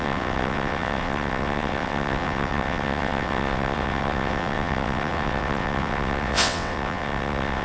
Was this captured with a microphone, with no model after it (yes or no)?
no